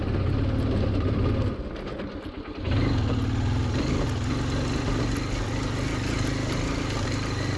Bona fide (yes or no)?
yes